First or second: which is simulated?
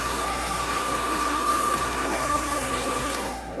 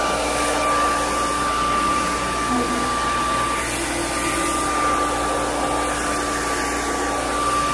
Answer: first